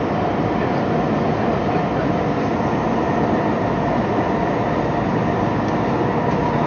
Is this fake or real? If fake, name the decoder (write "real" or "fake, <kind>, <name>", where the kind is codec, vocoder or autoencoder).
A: real